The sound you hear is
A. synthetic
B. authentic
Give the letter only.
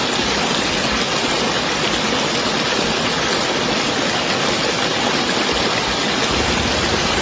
B